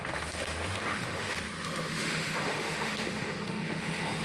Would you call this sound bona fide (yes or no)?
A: no